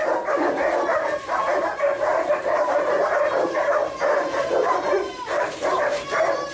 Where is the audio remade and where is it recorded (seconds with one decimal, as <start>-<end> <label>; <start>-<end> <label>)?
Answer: 0.0-2.1 recorded; 2.1-6.0 remade; 6.0-6.5 recorded

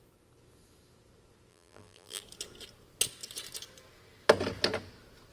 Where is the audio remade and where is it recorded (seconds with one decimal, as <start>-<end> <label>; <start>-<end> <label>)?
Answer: 0.0-1.5 recorded; 1.5-2.2 remade; 2.2-5.3 recorded

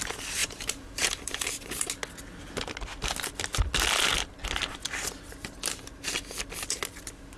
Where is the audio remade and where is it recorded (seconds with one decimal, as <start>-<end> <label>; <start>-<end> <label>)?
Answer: 0.0-0.4 recorded; 0.4-1.9 remade; 1.9-7.4 recorded

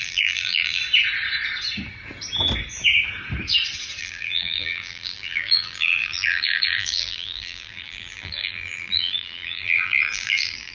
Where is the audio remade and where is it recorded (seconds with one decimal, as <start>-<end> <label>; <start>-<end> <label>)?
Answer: 0.0-0.8 remade; 0.8-4.0 recorded; 4.0-10.7 remade

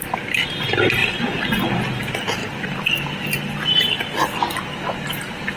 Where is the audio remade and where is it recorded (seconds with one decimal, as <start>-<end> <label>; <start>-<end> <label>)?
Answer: 0.0-1.0 recorded; 1.0-2.0 remade; 2.0-2.4 recorded; 2.4-3.8 remade; 3.8-5.6 recorded

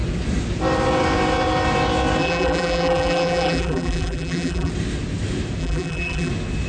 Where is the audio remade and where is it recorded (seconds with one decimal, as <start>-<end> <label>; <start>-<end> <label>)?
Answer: 0.0-2.2 recorded; 2.2-4.7 remade; 4.7-5.6 recorded; 5.6-6.3 remade; 6.3-6.7 recorded